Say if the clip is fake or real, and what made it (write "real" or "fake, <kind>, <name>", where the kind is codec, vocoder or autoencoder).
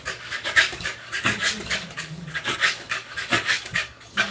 fake, codec, DAC